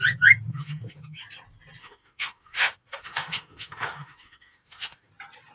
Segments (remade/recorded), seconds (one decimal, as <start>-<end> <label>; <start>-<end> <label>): 0.0-0.5 recorded; 0.5-1.2 remade; 1.2-1.8 recorded; 1.8-5.1 remade; 5.1-5.5 recorded